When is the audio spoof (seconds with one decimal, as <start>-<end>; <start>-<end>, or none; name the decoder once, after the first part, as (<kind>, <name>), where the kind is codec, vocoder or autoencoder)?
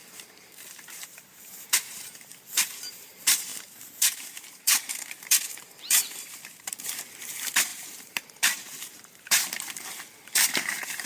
0.0-11.1 (vocoder, BigVGAN v2)